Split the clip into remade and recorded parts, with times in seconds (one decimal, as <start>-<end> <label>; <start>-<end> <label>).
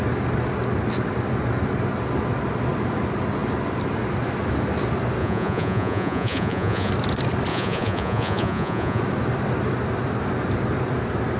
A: 0.0-5.2 recorded; 5.2-6.9 remade; 6.9-7.5 recorded; 7.5-9.0 remade; 9.0-11.4 recorded